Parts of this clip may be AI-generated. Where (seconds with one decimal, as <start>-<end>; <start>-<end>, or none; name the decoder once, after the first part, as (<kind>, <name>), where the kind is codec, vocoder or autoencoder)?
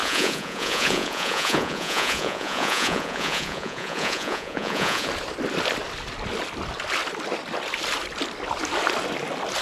0.0-5.1 (vocoder, Vocos)